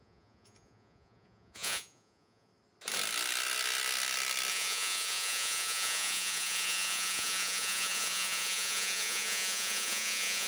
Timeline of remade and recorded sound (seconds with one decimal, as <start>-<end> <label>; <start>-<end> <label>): 0.0-2.5 remade; 2.5-4.5 recorded; 4.5-10.5 remade